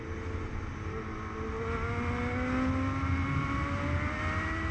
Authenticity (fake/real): real